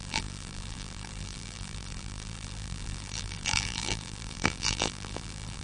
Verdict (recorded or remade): remade